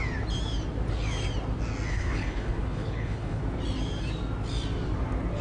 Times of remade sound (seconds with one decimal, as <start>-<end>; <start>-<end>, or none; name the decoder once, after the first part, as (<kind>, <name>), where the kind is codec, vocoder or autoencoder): 1.9-3.4 (codec, HILCodec)